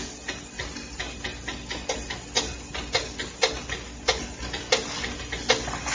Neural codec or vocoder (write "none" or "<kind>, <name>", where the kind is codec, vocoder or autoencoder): none